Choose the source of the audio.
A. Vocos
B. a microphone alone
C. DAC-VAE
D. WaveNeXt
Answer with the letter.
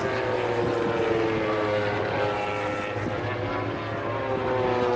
B